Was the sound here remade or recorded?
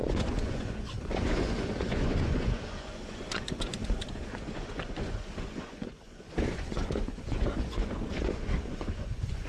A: remade